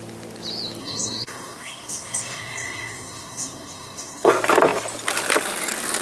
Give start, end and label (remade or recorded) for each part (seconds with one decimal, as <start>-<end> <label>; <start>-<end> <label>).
0.0-0.8 recorded; 0.8-4.3 remade; 4.3-6.0 recorded